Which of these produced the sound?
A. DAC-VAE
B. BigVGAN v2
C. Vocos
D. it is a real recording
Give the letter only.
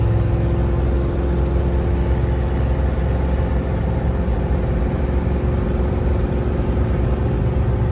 D